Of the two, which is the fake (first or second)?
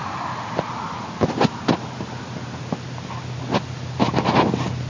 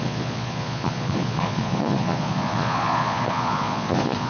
second